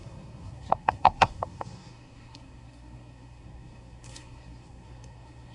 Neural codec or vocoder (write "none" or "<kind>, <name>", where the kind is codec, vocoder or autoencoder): codec, SNAC